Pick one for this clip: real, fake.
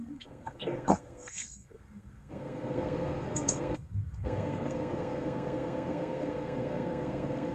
fake